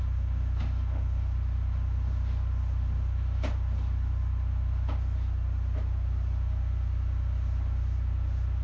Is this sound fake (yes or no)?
no